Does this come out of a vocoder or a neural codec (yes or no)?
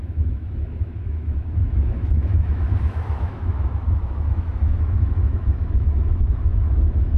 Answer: yes